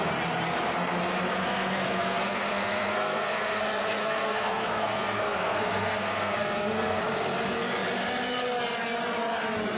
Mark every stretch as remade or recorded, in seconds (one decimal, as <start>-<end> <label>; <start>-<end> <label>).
0.0-1.4 recorded; 1.4-3.6 remade; 3.6-4.0 recorded; 4.0-7.0 remade; 7.0-9.8 recorded